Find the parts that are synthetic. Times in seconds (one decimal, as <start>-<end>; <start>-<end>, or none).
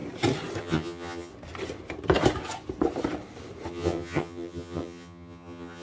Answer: 0.6-1.3; 3.7-5.8